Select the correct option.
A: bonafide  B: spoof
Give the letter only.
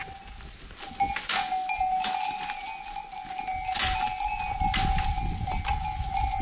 A